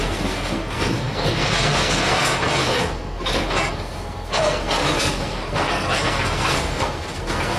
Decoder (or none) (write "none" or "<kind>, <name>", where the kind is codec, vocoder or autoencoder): codec, SNAC